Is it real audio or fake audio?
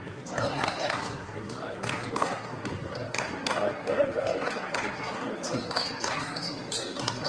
fake